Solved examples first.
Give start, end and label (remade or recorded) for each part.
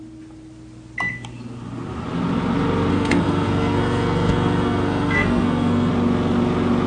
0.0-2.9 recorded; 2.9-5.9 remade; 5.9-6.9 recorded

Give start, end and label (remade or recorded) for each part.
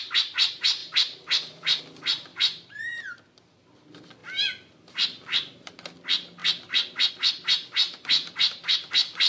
0.0-0.8 recorded; 0.8-1.8 remade; 1.8-2.3 recorded; 2.3-3.0 remade; 3.0-9.3 recorded